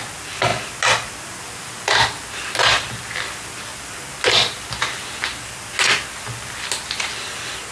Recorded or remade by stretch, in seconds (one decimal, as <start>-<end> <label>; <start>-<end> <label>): 0.0-7.7 recorded